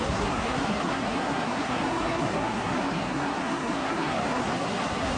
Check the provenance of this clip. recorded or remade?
remade